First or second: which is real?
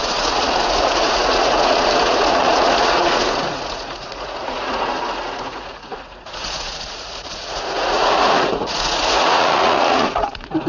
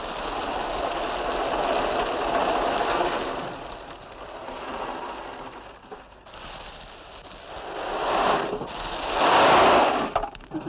second